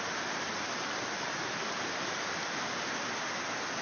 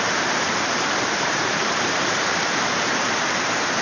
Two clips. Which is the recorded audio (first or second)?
first